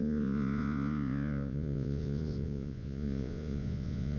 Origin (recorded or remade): remade